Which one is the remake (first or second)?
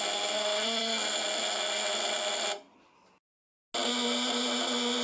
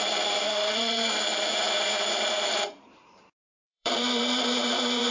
second